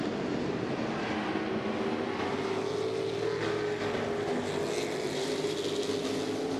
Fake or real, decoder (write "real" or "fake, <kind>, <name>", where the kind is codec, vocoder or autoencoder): real